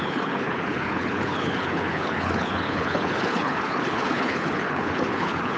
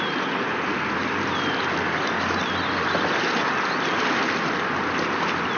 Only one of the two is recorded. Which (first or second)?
second